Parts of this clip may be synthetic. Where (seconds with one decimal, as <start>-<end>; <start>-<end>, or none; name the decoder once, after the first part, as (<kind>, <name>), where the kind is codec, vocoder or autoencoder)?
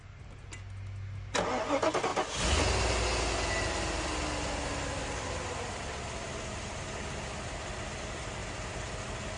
none